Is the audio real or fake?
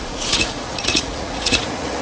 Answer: fake